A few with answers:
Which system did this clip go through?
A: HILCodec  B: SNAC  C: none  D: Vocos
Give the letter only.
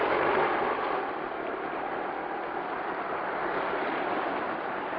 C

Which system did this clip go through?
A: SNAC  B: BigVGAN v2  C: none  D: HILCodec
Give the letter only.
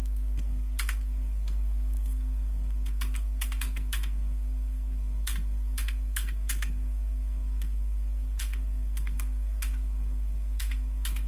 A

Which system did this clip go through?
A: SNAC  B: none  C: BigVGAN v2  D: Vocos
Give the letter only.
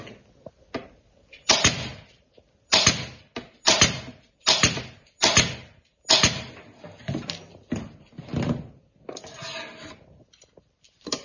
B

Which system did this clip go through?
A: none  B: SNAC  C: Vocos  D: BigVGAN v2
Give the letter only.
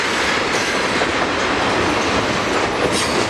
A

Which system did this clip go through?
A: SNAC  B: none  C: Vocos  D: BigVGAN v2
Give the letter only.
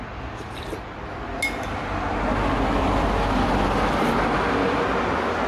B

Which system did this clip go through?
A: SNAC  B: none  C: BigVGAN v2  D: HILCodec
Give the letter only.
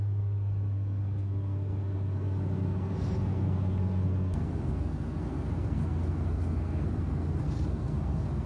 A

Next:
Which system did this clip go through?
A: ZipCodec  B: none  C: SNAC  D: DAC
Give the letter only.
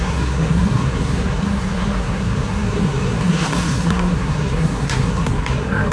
C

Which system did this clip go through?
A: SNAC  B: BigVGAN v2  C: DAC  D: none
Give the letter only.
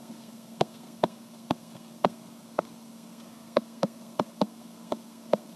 A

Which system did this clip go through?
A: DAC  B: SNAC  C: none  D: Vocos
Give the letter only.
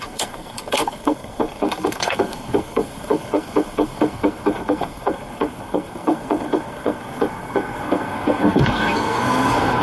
B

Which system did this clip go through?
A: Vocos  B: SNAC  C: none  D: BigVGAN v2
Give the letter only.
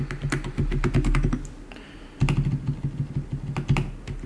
C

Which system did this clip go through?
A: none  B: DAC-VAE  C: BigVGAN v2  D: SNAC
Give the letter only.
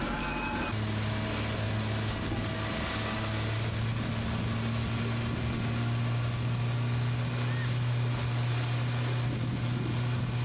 A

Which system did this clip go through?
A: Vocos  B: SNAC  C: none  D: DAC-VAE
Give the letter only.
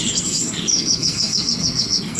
B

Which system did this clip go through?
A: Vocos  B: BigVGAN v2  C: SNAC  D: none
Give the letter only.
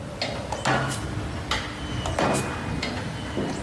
D